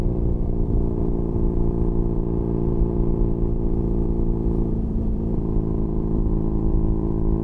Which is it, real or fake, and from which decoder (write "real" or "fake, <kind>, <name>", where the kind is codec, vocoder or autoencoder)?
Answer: fake, vocoder, BigVGAN v2